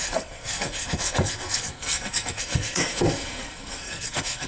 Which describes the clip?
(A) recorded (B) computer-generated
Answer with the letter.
B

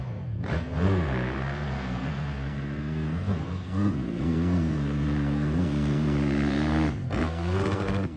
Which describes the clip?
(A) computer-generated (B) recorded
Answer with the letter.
A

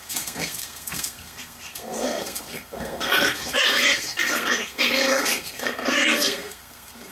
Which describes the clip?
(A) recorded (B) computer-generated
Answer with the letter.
B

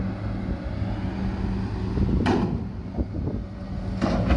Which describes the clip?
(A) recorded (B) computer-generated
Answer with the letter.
A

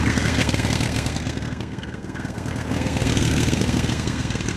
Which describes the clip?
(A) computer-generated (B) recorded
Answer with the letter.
A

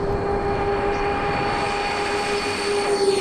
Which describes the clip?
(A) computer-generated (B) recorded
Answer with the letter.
B